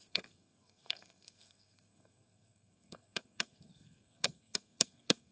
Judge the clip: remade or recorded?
remade